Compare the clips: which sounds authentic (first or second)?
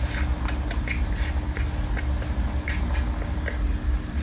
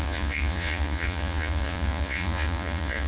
first